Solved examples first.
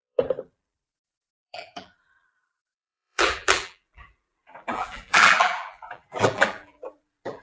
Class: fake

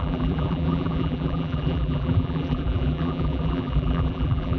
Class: fake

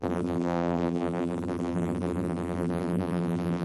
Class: fake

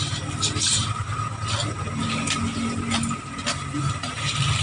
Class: fake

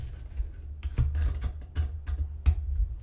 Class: real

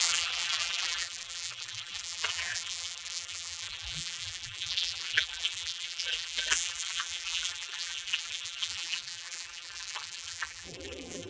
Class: fake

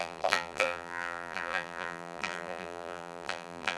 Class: fake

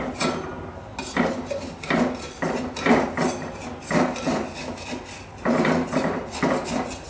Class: real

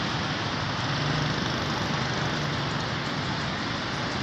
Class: real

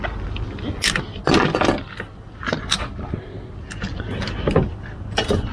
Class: real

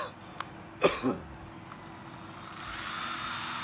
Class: real